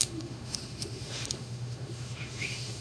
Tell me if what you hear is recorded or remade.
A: remade